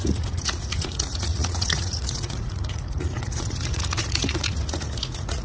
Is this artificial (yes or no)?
yes